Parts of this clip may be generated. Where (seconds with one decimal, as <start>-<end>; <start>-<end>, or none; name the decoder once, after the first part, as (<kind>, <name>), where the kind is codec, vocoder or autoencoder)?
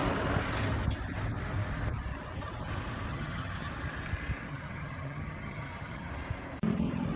3.1-3.7 (vocoder, HiFi-GAN); 4.5-6.1